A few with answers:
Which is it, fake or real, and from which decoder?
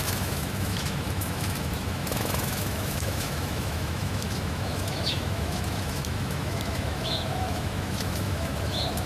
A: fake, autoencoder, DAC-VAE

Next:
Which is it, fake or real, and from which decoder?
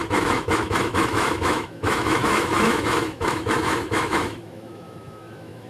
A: fake, autoencoder, DAC-VAE